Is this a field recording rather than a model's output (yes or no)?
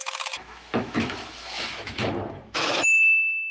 no